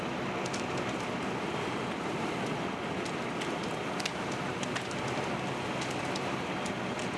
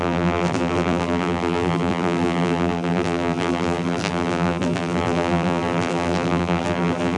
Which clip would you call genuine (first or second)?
first